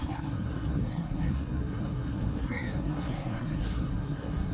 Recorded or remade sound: remade